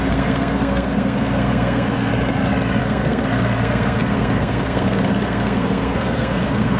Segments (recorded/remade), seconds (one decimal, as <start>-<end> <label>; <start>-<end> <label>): 0.0-2.1 remade; 2.1-2.8 recorded; 2.8-6.8 remade